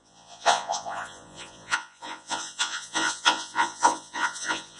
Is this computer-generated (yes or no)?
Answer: yes